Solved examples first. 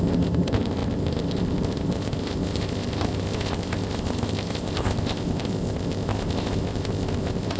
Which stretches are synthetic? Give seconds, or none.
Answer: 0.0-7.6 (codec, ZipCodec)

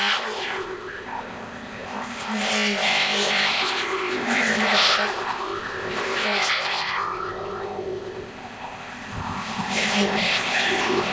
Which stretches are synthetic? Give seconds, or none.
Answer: 0.0-11.1 (codec, ZipCodec)

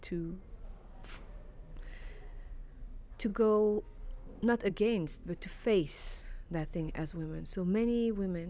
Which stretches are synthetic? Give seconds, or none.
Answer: none

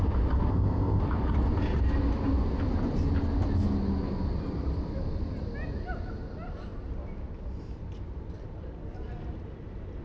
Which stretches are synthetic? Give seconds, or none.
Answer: 0.5-1.0 (codec, ZipCodec)

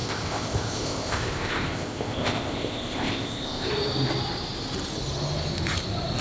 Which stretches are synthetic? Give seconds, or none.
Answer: 0.0-3.7 (codec, ZipCodec)